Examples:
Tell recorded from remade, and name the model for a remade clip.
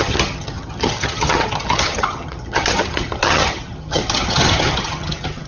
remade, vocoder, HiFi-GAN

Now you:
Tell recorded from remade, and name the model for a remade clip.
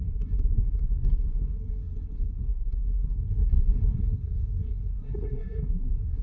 remade, codec, SNAC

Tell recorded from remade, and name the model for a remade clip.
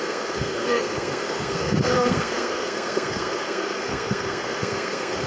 remade, codec, SNAC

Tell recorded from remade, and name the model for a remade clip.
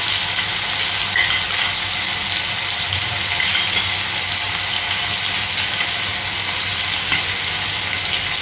recorded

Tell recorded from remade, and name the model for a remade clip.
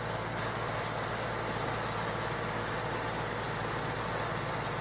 recorded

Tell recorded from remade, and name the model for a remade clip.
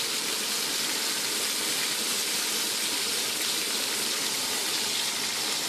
recorded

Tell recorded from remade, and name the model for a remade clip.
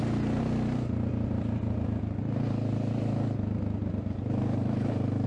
recorded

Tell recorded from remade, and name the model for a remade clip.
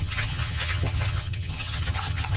remade, vocoder, HiFi-GAN